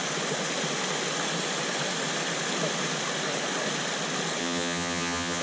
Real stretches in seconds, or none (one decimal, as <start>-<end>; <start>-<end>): 0.0-4.4

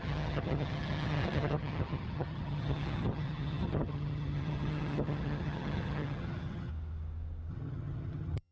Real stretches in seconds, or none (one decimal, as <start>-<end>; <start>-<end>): 6.7-7.5

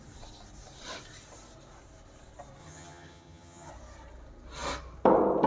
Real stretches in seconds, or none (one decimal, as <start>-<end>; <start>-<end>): 0.0-2.6; 3.7-5.5

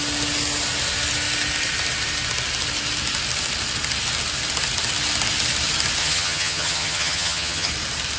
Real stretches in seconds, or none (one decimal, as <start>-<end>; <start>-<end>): 0.0-6.0; 7.7-8.2